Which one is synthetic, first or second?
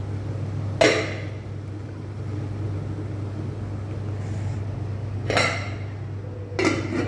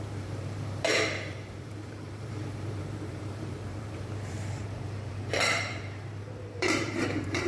second